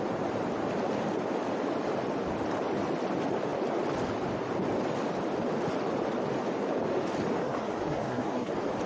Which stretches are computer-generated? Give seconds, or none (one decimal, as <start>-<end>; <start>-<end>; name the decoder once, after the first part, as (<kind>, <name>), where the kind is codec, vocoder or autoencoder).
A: 7.4-8.5 (codec, SNAC)